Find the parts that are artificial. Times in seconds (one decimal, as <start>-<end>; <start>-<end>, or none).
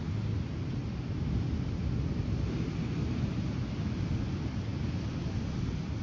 none